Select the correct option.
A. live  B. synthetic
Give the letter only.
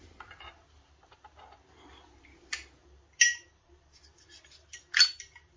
A